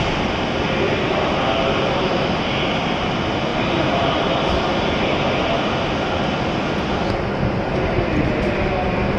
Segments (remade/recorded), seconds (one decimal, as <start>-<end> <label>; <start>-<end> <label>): 0.0-9.2 recorded